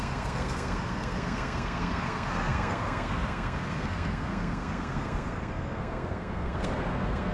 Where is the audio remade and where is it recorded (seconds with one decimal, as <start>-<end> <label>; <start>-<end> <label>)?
0.0-7.3 remade